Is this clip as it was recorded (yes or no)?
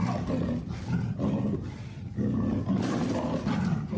yes